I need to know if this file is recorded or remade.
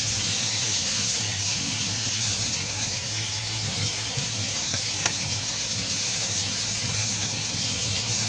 remade